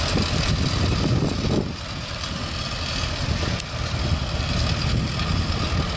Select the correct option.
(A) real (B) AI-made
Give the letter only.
A